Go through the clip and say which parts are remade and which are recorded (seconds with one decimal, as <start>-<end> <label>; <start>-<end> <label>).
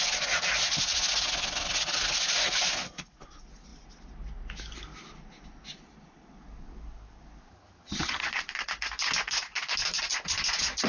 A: 0.0-7.5 recorded; 7.5-8.3 remade; 8.3-10.9 recorded